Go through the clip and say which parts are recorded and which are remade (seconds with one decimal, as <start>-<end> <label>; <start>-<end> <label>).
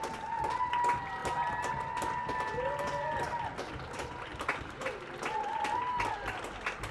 0.0-6.9 recorded